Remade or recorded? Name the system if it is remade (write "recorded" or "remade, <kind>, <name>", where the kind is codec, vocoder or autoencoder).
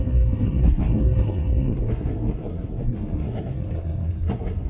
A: remade, codec, SNAC